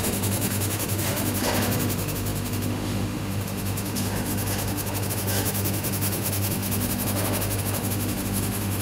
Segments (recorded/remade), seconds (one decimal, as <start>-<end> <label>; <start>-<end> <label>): 0.0-8.8 remade